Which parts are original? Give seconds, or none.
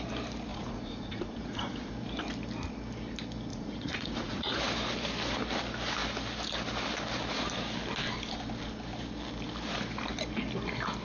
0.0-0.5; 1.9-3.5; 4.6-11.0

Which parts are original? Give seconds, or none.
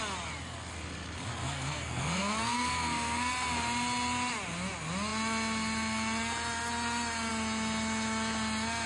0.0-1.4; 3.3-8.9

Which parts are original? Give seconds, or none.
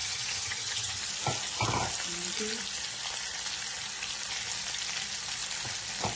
1.0-6.2